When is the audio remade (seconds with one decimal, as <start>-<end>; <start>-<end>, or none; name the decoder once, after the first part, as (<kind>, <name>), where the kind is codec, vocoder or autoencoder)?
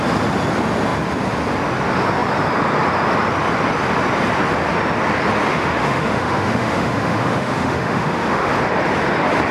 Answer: 5.5-8.5 (autoencoder, DAC-VAE)